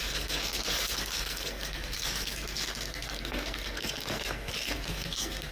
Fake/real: fake